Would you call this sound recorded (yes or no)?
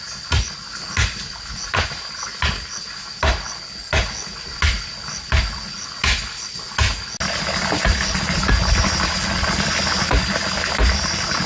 yes